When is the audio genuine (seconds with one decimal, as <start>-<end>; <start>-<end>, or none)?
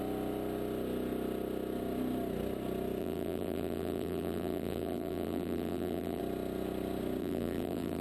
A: 0.0-3.0; 6.2-7.2